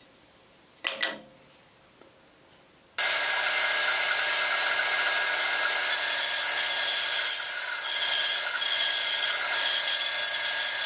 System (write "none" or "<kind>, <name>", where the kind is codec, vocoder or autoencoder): none